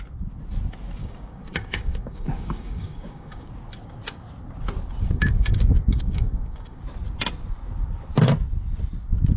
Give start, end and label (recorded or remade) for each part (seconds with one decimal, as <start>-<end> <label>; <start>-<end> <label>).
0.0-1.0 recorded; 1.0-3.5 remade; 3.5-5.0 recorded; 5.0-6.8 remade; 6.8-9.4 recorded

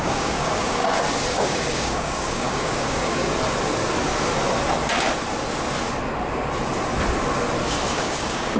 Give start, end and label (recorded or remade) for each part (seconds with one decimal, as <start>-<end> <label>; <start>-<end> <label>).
0.0-0.8 remade; 0.8-1.3 recorded; 1.3-3.3 remade; 3.3-7.9 recorded; 7.9-8.6 remade

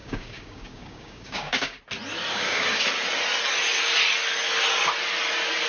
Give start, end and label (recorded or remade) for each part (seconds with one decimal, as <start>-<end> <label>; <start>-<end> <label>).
0.0-1.8 remade; 1.8-2.3 recorded; 2.3-2.8 remade; 2.8-5.7 recorded

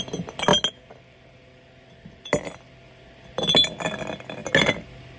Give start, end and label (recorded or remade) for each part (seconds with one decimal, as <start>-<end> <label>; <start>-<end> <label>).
0.0-5.2 recorded